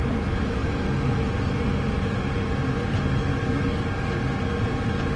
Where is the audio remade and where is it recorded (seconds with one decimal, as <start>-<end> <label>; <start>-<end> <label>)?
0.0-3.3 recorded; 3.3-4.1 remade; 4.1-5.2 recorded